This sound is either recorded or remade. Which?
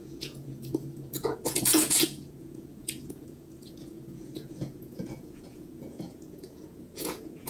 remade